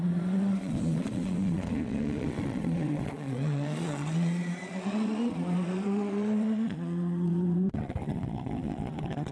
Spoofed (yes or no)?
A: yes